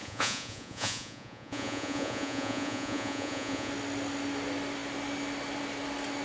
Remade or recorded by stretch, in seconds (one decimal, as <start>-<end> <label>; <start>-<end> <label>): 0.0-3.7 remade; 3.7-6.2 recorded